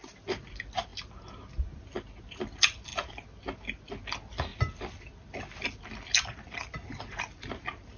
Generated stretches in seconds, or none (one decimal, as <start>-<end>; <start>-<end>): 6.8-7.5